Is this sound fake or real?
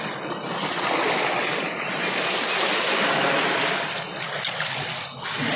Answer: real